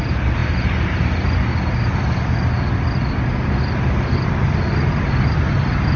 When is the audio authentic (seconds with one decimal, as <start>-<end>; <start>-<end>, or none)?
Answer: 0.0-6.0